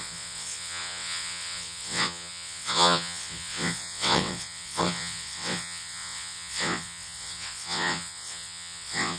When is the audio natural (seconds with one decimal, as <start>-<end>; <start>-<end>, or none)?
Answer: none